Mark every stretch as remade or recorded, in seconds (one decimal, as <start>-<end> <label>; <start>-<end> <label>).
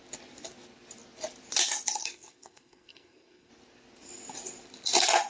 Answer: 0.0-2.0 recorded; 2.0-3.5 remade; 3.5-5.3 recorded